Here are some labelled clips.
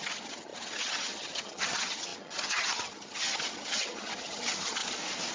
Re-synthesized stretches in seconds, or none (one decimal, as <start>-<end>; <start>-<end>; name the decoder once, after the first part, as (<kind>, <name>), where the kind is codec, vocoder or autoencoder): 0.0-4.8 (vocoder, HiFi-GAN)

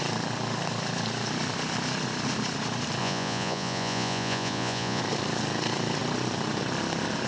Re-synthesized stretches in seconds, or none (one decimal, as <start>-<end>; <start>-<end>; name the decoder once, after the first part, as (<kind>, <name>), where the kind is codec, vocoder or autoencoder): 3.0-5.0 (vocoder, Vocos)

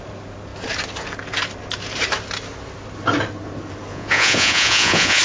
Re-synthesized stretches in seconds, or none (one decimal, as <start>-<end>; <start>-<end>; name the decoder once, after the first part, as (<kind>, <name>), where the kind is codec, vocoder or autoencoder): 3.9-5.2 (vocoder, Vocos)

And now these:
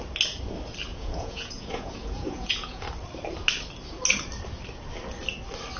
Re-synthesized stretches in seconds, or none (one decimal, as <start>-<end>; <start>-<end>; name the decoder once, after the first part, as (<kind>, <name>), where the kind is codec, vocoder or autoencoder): 0.9-2.9 (vocoder, Vocos)

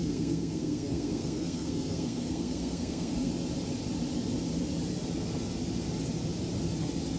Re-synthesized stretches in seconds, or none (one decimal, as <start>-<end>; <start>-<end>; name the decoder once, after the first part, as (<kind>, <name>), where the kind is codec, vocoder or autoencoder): 0.0-3.3 (codec, SNAC)

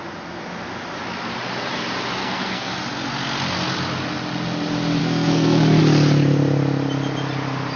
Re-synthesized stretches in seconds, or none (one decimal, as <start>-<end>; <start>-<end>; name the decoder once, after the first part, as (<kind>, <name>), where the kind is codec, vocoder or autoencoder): 2.2-2.7 (codec, SNAC); 5.0-5.8

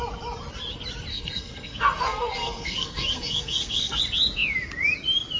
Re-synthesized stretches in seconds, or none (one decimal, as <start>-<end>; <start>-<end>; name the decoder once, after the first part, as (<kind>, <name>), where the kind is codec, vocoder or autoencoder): 1.1-4.0 (codec, SNAC)